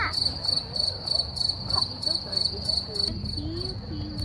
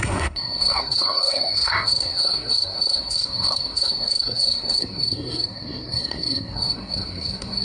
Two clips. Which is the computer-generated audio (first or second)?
second